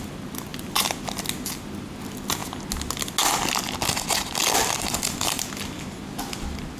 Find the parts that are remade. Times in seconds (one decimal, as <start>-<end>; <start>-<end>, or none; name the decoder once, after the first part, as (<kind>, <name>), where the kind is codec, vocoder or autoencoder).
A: none